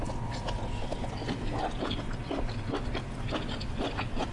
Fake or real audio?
real